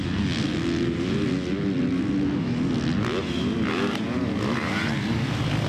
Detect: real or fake real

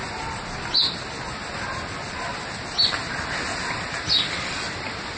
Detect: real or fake real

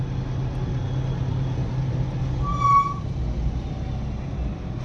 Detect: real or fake real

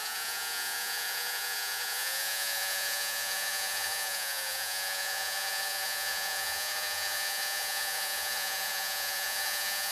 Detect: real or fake fake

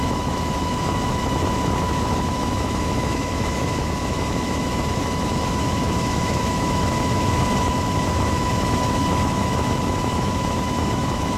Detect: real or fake fake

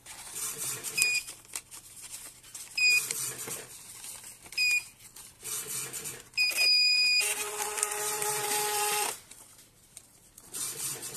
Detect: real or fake fake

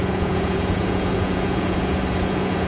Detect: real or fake fake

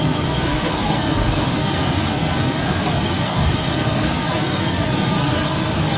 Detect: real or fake fake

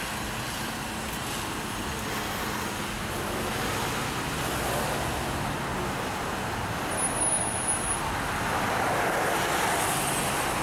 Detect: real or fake real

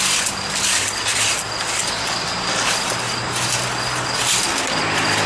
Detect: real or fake real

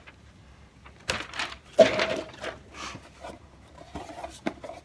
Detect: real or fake real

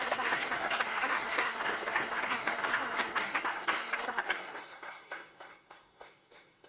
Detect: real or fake fake